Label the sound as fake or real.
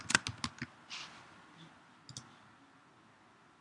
real